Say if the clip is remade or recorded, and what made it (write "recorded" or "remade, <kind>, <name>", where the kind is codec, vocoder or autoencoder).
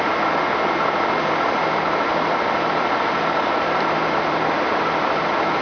recorded